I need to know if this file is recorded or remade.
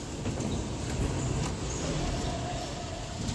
recorded